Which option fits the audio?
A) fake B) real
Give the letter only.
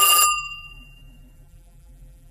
A